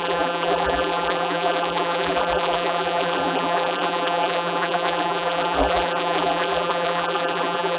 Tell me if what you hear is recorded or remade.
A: remade